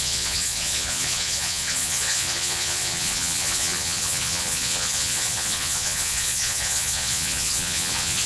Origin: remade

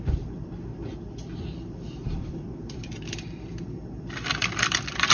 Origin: remade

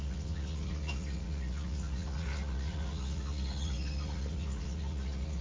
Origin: remade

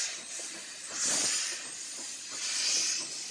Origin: recorded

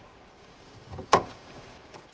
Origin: remade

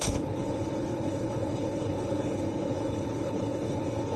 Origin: remade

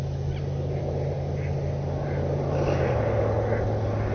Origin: recorded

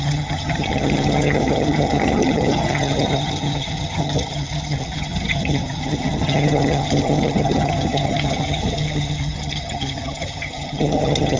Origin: remade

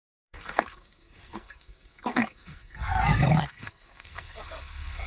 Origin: remade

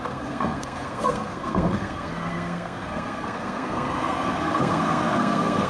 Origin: remade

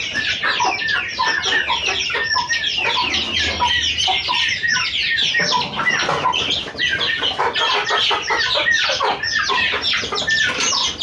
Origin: recorded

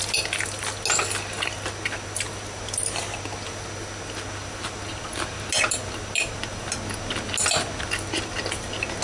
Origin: recorded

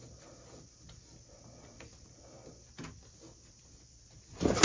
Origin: recorded